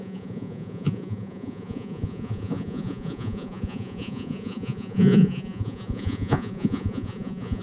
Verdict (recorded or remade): remade